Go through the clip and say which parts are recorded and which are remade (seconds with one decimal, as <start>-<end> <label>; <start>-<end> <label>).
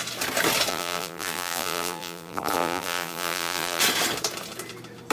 0.0-0.7 recorded; 0.7-3.8 remade; 3.8-5.1 recorded